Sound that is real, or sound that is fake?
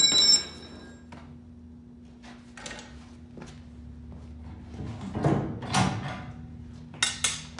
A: real